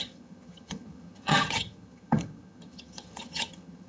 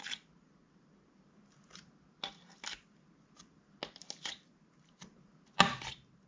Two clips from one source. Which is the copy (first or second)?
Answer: first